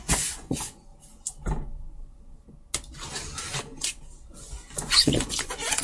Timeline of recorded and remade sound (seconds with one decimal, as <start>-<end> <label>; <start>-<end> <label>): 0.0-0.9 remade; 0.9-4.4 recorded; 4.4-5.8 remade